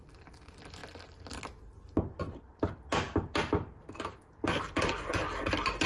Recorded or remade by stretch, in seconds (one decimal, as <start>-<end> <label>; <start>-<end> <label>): 0.0-5.9 recorded

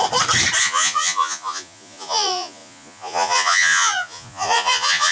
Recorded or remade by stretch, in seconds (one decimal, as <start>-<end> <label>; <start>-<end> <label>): 0.0-0.6 recorded; 0.6-5.1 remade

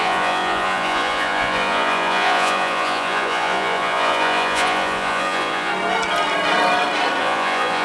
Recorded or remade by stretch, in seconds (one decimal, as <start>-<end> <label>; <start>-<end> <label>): 0.0-5.7 remade; 5.7-7.2 recorded; 7.2-7.8 remade

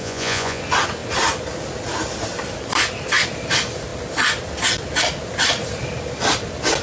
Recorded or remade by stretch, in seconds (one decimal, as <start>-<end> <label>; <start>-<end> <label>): 0.0-0.6 remade; 0.6-6.8 recorded

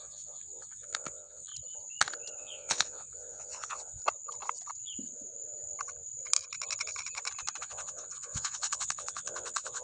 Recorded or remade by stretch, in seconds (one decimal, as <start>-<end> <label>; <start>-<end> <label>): 0.0-1.5 remade; 1.5-2.4 recorded; 2.4-4.0 remade; 4.0-7.6 recorded; 7.6-9.8 remade

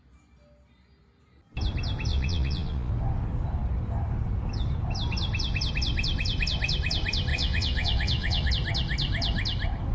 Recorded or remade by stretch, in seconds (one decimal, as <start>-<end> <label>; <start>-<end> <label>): 0.0-2.1 recorded; 2.1-2.9 remade; 2.9-7.3 recorded; 7.3-8.5 remade; 8.5-9.9 recorded

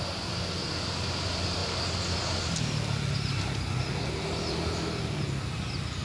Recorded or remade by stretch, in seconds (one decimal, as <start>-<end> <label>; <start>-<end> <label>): 0.0-6.0 recorded